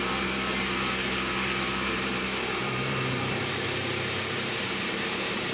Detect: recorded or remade remade